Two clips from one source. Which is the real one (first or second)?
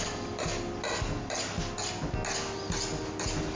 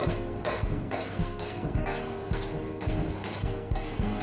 first